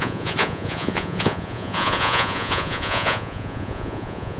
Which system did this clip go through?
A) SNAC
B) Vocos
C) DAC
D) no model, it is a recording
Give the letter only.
B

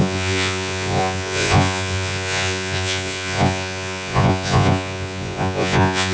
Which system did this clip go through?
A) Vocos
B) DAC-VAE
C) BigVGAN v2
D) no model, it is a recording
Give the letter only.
A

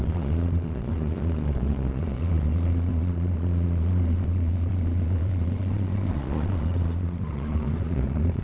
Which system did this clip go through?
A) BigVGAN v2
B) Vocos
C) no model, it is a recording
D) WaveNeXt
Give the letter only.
B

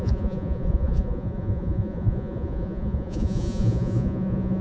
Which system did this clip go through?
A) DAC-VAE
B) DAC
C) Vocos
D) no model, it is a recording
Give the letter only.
C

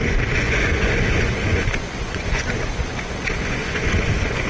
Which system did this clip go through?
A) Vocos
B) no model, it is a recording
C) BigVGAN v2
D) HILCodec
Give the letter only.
A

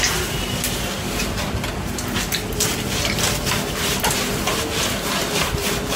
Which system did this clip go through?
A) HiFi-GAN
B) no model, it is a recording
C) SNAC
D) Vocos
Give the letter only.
B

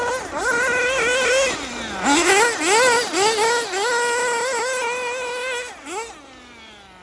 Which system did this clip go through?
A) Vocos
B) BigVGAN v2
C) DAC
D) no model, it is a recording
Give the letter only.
D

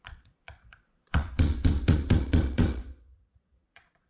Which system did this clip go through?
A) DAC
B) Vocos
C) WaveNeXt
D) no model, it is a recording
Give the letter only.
B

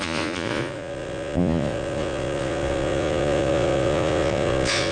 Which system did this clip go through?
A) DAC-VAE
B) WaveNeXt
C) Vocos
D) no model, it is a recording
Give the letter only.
C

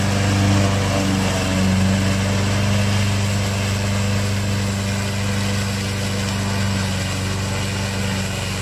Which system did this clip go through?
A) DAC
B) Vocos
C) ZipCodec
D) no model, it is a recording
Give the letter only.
D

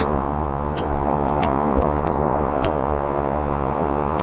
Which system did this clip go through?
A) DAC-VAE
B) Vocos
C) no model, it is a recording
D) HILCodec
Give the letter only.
B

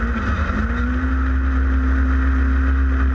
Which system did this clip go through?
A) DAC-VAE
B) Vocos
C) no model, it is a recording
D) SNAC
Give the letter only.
C